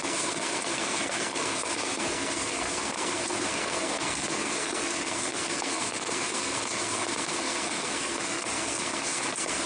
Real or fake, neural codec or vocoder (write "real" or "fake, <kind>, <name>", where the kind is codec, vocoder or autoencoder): fake, codec, SNAC